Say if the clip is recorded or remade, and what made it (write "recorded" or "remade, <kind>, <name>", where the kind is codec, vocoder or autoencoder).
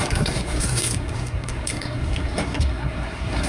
remade, codec, SNAC